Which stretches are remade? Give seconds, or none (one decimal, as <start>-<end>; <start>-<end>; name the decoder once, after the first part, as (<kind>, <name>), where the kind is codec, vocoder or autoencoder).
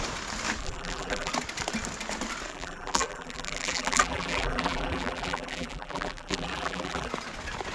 0.6-1.3 (vocoder, BigVGAN v2); 2.5-7.1